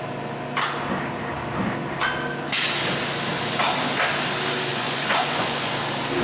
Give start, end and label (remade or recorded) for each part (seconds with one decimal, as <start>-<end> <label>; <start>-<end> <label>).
0.0-4.7 recorded; 4.7-5.7 remade; 5.7-6.2 recorded